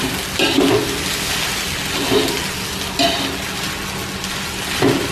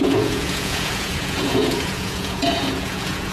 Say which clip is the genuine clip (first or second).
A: first